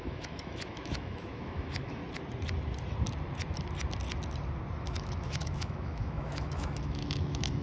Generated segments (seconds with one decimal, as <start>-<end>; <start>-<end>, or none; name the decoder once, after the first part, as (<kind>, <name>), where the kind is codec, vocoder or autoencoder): 0.0-2.0 (autoencoder, DAC-VAE); 4.8-7.6